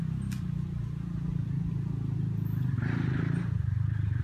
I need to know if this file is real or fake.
real